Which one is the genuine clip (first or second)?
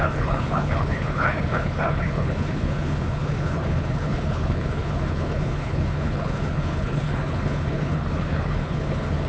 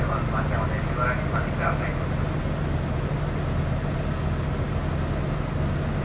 second